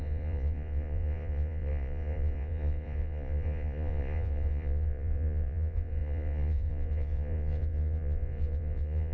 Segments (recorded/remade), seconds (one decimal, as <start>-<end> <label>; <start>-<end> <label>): 0.0-9.1 remade